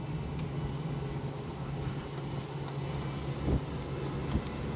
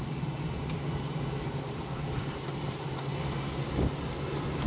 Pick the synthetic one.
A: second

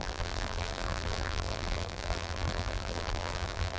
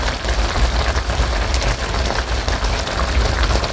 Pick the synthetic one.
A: first